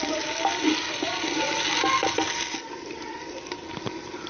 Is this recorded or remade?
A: recorded